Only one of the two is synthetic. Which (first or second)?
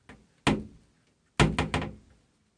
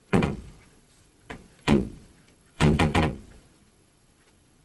second